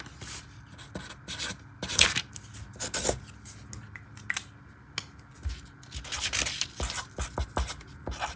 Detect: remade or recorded recorded